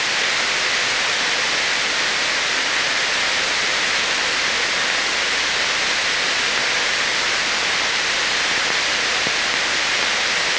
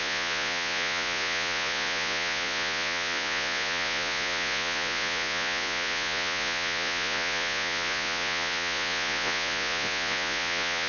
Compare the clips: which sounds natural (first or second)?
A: first